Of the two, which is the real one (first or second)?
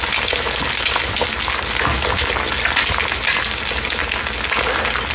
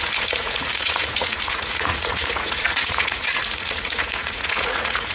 first